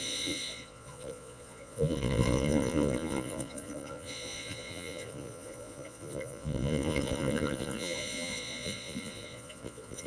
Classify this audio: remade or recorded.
remade